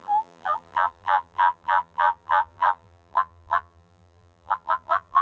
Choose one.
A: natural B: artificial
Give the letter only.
B